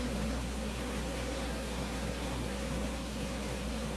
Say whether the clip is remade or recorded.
remade